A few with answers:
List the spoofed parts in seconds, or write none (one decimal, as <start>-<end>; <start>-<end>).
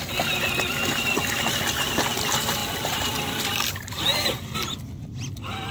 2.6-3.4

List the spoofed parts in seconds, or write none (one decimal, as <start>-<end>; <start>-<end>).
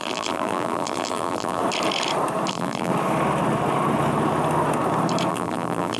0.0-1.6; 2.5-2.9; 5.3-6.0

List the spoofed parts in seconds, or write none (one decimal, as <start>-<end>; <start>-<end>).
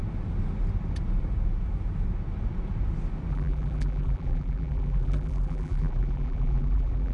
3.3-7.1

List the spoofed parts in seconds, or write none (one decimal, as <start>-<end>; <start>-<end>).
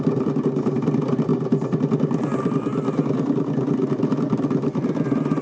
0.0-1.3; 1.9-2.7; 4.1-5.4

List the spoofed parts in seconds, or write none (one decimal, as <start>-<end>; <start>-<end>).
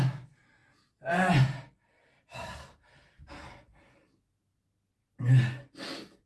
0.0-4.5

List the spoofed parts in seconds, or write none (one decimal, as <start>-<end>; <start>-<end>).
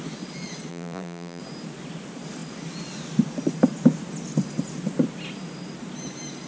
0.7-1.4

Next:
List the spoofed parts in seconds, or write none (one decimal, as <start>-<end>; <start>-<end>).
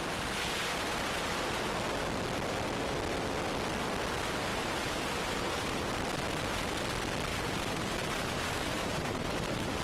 4.5-5.9; 7.3-9.8